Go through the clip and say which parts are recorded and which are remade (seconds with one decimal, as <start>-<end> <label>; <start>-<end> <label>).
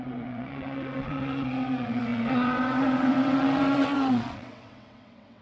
0.0-5.4 remade